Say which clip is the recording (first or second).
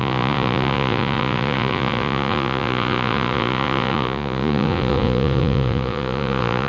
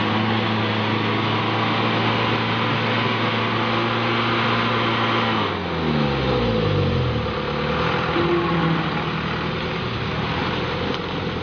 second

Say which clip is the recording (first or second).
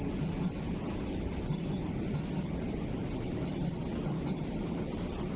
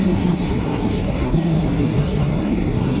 first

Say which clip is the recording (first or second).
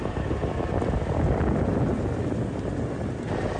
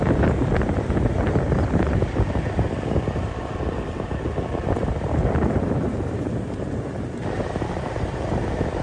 first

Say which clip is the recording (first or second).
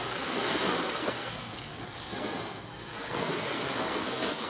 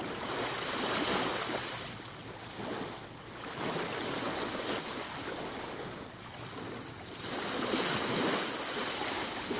second